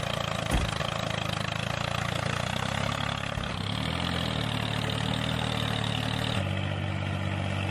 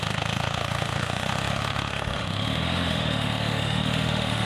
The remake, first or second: second